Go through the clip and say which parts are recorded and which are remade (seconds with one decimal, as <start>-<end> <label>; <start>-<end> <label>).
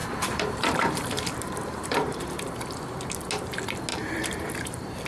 0.0-2.2 remade; 2.2-3.9 recorded; 3.9-4.5 remade; 4.5-5.1 recorded